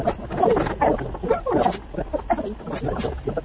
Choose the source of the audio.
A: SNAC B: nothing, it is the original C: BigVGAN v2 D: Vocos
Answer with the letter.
B